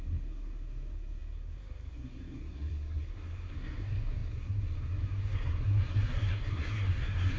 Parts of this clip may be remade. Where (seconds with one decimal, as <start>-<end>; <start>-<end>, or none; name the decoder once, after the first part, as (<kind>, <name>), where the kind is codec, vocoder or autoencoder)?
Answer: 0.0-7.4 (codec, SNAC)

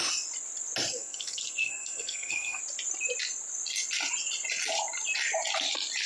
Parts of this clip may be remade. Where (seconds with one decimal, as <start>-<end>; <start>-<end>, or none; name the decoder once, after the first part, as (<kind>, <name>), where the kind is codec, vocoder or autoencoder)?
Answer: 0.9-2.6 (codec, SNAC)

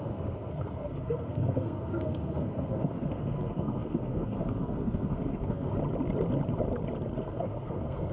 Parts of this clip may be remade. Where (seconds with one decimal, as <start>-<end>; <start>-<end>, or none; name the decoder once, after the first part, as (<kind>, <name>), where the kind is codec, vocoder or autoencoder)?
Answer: 0.0-5.7 (codec, SNAC); 7.2-8.1

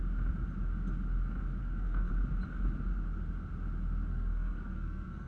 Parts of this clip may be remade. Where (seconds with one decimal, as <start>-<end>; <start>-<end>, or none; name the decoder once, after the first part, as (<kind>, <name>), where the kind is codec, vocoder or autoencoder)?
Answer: 1.6-2.1 (codec, SNAC); 4.1-5.3

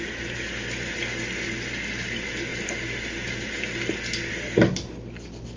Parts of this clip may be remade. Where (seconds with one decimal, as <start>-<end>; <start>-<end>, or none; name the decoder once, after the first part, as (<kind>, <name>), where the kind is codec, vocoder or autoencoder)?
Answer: none

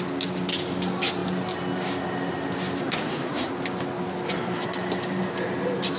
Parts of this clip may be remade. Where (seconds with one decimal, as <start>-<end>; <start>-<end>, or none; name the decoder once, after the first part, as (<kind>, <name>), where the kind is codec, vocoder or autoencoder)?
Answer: 2.8-3.5 (codec, SNAC)

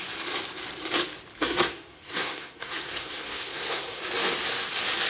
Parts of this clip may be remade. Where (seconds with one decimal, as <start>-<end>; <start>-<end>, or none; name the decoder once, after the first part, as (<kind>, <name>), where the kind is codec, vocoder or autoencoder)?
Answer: 1.4-4.0 (codec, SNAC)

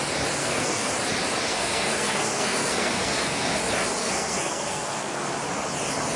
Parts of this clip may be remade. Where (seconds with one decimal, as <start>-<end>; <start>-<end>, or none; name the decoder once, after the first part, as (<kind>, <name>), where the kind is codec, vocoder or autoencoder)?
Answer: 0.4-0.9 (codec, SNAC); 1.5-3.6; 4.0-5.3